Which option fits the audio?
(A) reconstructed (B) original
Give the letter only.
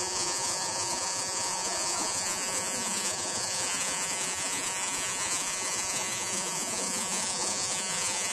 A